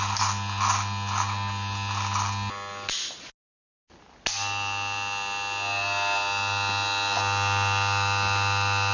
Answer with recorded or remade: recorded